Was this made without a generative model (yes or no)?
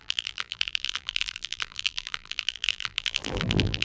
no